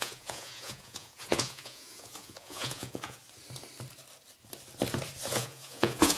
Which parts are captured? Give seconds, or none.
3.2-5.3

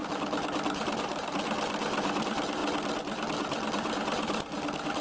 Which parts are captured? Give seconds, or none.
0.0-5.0

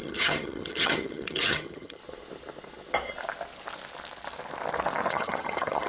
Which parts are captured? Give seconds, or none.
2.0-5.1

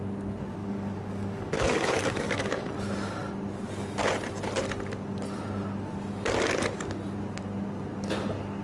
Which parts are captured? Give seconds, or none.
0.0-0.6; 2.7-8.6

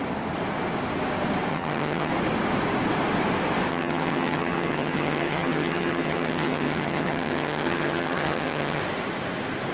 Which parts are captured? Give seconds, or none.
0.0-1.5; 2.1-3.7; 8.8-9.7

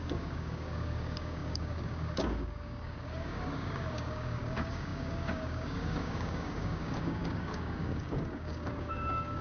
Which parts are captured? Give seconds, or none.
none

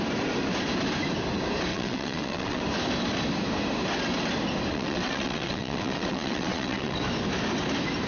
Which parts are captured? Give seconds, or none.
0.0-1.7; 2.6-4.7; 7.0-8.1